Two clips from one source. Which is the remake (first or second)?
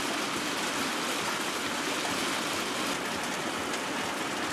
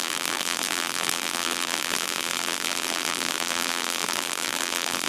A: second